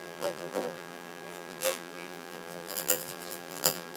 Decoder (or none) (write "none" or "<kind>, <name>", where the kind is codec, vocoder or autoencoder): vocoder, BigVGAN v2